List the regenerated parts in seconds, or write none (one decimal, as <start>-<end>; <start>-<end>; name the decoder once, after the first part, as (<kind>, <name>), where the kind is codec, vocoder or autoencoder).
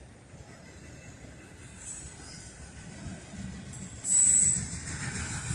none